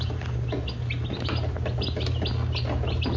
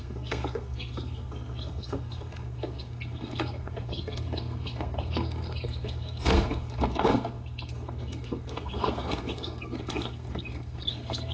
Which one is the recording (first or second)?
first